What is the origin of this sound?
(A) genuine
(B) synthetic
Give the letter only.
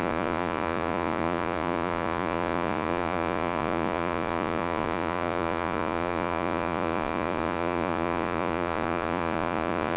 B